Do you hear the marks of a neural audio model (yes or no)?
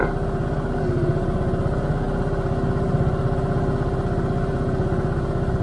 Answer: no